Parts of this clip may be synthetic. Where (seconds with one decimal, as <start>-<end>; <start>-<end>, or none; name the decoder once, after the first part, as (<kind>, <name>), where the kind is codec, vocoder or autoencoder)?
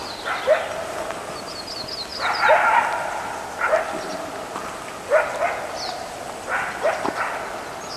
none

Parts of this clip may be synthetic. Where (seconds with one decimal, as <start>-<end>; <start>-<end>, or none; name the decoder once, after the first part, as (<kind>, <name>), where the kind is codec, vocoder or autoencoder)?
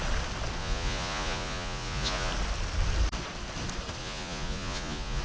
0.6-2.3 (vocoder, Vocos); 4.0-5.2